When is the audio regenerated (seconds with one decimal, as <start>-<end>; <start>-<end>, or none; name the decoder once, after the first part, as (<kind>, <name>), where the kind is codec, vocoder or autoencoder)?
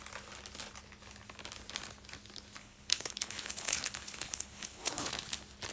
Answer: 2.6-5.1 (codec, HILCodec)